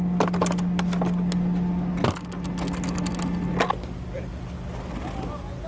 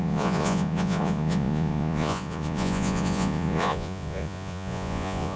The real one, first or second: first